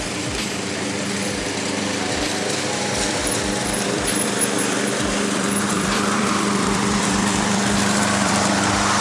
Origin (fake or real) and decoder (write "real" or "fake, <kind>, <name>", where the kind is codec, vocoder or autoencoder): fake, vocoder, BigVGAN v2